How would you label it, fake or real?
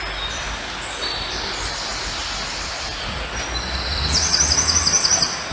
real